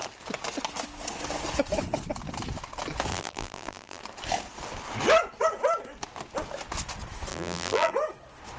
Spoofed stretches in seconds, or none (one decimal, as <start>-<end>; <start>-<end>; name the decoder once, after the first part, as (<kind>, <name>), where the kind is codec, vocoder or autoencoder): 3.1-4.0 (vocoder, BigVGAN v2); 7.3-7.9